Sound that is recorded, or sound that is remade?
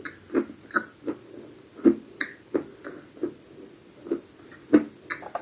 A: recorded